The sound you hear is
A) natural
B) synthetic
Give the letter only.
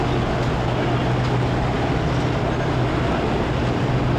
A